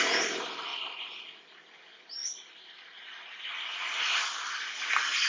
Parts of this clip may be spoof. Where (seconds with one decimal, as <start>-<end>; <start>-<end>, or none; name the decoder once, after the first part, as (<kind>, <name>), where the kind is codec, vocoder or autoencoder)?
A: none